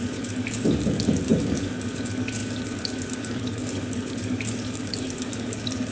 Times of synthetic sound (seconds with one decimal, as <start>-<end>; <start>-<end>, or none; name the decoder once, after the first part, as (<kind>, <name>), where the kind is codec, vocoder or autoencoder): 0.0-5.9 (codec, DAC)